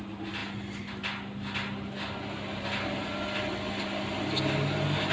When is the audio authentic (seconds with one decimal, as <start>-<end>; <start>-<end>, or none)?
0.0-5.1